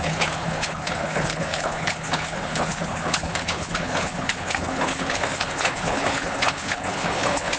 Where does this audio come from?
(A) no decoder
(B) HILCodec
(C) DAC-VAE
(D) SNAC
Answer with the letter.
B